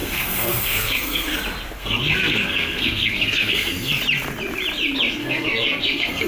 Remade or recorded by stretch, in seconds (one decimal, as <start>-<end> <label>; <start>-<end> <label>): 0.0-1.4 remade; 1.4-1.8 recorded; 1.8-4.0 remade; 4.0-5.2 recorded; 5.2-6.3 remade